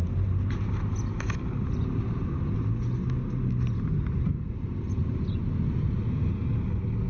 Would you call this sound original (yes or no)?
yes